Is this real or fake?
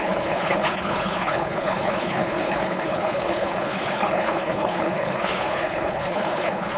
fake